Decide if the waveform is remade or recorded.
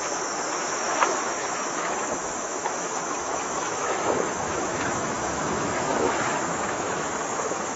remade